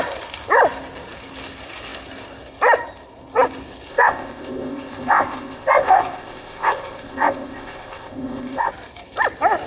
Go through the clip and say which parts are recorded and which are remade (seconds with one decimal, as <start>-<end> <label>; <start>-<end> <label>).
0.0-3.9 recorded; 3.9-8.7 remade; 8.7-9.7 recorded